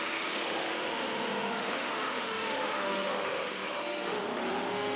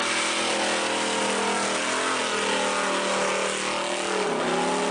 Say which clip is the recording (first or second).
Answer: second